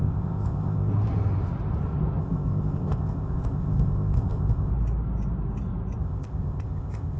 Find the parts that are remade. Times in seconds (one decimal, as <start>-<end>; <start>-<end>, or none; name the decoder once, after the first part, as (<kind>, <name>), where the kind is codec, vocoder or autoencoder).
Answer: 0.0-0.9 (codec, ZipCodec); 2.2-4.7; 6.0-7.2